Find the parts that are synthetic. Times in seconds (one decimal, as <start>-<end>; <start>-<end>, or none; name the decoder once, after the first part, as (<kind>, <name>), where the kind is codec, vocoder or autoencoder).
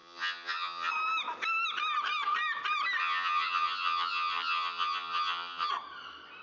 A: 0.0-0.9 (vocoder, HiFi-GAN); 3.0-5.7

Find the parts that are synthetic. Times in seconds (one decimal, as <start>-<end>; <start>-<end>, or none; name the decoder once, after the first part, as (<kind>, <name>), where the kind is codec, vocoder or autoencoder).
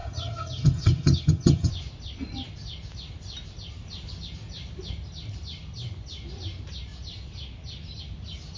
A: 0.0-1.7 (vocoder, HiFi-GAN)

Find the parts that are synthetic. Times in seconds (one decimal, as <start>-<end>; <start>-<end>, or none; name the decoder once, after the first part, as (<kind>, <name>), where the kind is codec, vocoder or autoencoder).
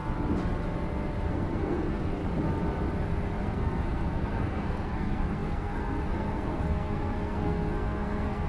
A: 1.3-2.2 (codec, SNAC); 3.4-8.5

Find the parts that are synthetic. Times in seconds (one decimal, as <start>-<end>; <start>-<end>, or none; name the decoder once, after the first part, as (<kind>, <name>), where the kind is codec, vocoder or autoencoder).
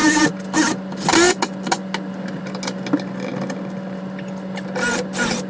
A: none